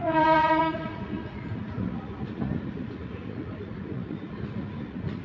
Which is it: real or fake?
fake